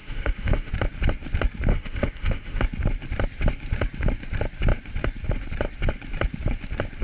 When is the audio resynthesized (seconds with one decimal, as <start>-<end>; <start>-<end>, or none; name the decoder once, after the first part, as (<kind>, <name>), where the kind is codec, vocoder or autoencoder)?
0.0-0.7 (autoencoder, DAC-VAE); 1.7-2.6

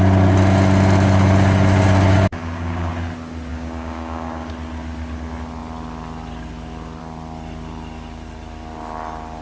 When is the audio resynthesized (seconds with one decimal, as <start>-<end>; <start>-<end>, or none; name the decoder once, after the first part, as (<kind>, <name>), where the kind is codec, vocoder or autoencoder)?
2.1-2.9 (codec, DAC); 3.5-4.5